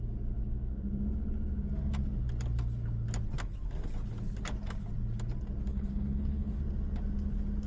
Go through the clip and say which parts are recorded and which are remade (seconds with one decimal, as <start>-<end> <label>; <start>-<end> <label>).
0.0-5.7 recorded; 5.7-6.6 remade; 6.6-7.7 recorded